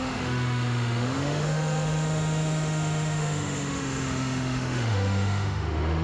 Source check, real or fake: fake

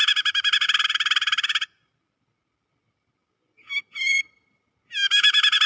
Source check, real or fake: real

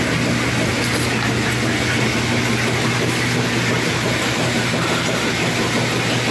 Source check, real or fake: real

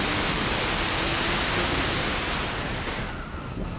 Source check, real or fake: real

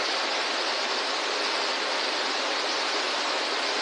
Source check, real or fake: real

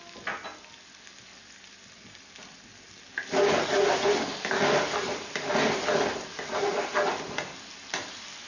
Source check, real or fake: real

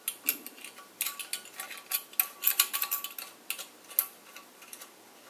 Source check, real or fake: real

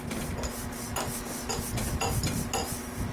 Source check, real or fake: real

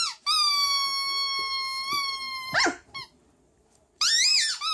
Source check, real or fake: real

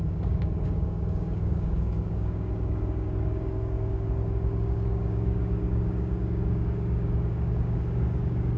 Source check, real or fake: fake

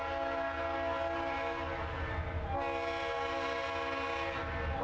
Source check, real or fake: real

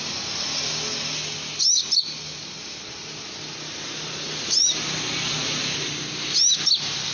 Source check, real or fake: real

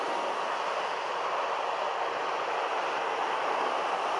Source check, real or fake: real